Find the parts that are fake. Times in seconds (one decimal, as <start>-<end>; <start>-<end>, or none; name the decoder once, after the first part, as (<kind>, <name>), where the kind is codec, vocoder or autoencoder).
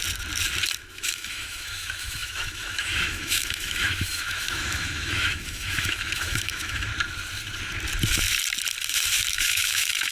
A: 0.8-6.9 (autoencoder, DAC-VAE); 9.3-10.1